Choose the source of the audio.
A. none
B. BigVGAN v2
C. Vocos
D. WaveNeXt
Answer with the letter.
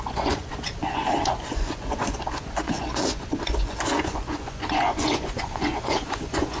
C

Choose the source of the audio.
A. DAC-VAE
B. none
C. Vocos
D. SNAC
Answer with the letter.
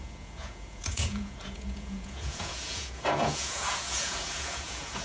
C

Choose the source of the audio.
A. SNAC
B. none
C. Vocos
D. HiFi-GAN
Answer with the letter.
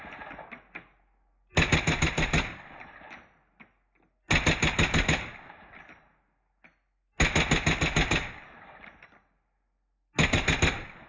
B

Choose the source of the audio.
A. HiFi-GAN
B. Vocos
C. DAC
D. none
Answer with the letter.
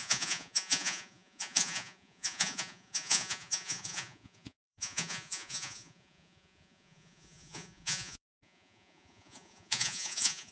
B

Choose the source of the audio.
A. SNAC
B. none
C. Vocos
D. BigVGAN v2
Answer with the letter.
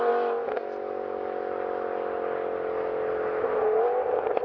B